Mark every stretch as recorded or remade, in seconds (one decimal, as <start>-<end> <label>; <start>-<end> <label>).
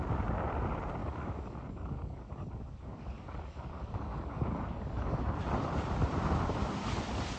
0.0-1.0 recorded; 1.0-5.2 remade; 5.2-7.4 recorded